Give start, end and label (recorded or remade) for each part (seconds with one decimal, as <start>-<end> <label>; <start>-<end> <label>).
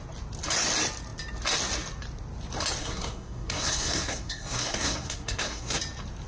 0.0-2.8 recorded; 2.8-5.8 remade; 5.8-6.3 recorded